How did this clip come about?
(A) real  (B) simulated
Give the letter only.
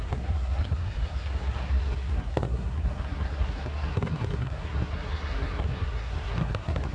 B